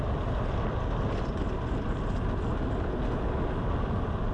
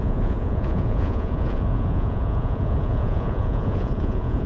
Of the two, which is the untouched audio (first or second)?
first